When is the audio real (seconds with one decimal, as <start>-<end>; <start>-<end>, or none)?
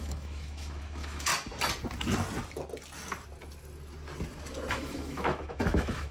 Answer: 1.3-4.7